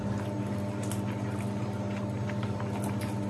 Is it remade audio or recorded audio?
recorded